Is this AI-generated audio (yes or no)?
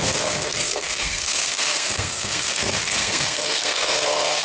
yes